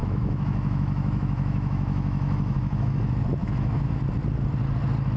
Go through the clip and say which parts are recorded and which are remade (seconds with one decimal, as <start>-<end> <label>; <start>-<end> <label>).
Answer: 0.0-3.0 remade; 3.0-3.4 recorded; 3.4-4.0 remade; 4.0-5.2 recorded